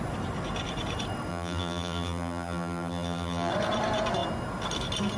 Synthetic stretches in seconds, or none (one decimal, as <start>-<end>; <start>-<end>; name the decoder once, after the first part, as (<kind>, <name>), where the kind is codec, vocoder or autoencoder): 1.3-3.5 (vocoder, BigVGAN v2)